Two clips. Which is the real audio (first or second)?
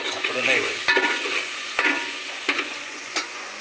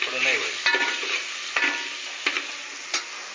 second